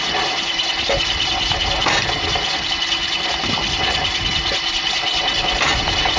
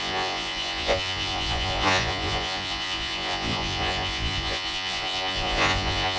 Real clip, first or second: first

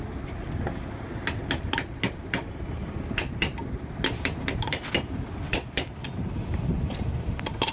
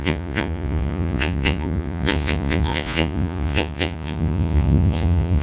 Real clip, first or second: first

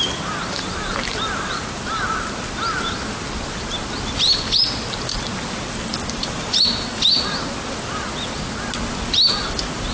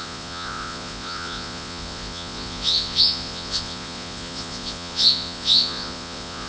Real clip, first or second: first